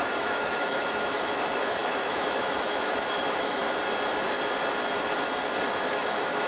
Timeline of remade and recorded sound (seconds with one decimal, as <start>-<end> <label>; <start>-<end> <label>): 0.0-3.6 remade; 3.6-5.9 recorded; 5.9-6.5 remade